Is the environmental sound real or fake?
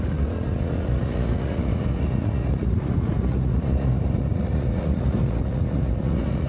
fake